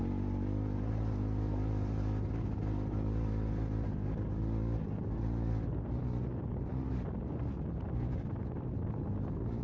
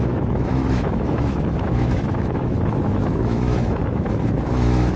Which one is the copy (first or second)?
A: second